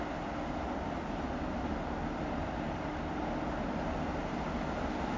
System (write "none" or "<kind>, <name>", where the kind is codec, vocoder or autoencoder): none